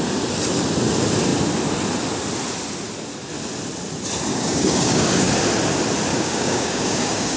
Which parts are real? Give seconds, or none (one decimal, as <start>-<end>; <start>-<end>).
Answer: 0.0-4.3; 5.3-6.1